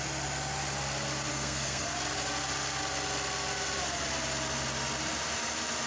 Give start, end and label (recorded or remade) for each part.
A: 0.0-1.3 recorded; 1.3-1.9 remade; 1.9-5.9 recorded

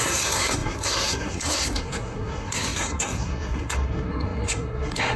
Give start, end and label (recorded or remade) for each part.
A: 0.0-5.2 remade

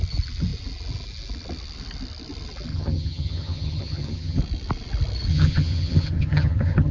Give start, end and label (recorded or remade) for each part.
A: 0.0-2.7 recorded; 2.7-4.4 remade; 4.4-5.3 recorded; 5.3-6.9 remade

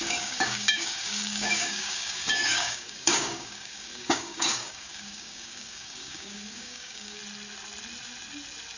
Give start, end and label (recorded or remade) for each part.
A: 0.0-7.2 remade; 7.2-8.8 recorded

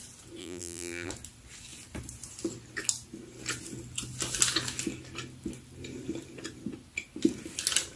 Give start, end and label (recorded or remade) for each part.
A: 0.0-0.4 recorded; 0.4-1.1 remade; 1.1-8.0 recorded

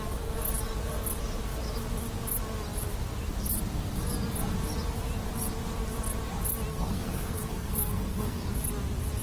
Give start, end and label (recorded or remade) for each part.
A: 0.0-6.7 recorded; 6.7-8.4 remade; 8.4-9.2 recorded

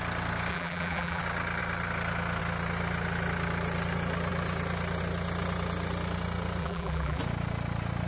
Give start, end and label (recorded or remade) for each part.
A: 0.0-0.5 recorded; 0.5-1.2 remade; 1.2-6.6 recorded; 6.6-7.2 remade; 7.2-8.1 recorded

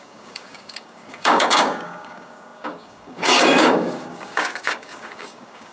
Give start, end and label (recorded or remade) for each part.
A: 0.0-5.7 remade